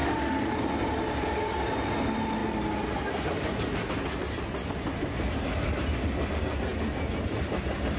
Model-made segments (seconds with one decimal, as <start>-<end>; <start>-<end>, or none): 0.0-0.5

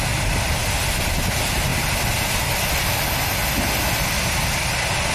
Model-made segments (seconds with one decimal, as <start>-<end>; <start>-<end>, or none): none